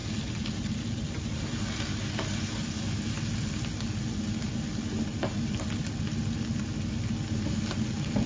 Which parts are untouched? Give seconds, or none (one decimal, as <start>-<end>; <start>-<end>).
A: 0.0-8.3